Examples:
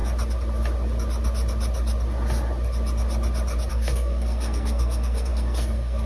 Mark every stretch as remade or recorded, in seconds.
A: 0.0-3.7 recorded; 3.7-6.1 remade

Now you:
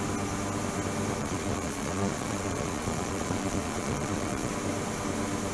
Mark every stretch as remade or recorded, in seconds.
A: 0.0-1.2 recorded; 1.2-4.5 remade; 4.5-5.5 recorded

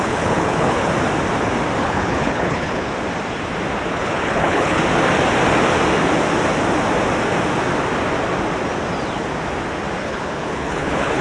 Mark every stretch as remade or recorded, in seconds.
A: 0.0-0.9 remade; 0.9-1.8 recorded; 1.8-2.9 remade; 2.9-3.9 recorded; 3.9-4.8 remade; 4.8-10.0 recorded; 10.0-11.2 remade